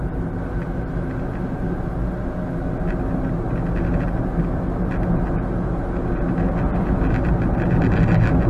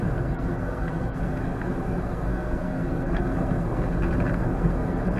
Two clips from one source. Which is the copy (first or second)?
second